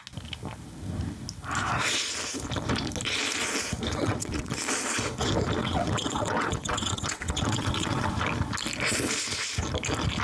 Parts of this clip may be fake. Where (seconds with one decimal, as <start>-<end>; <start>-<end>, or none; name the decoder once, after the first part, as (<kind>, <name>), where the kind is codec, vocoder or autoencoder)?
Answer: 3.9-4.5 (vocoder, WaveNeXt); 5.6-8.1